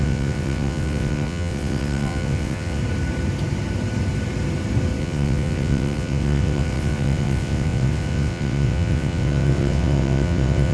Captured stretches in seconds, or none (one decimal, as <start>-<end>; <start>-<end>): 2.8-5.0